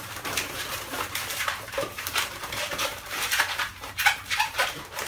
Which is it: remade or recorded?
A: remade